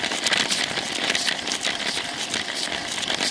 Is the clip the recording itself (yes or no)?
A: yes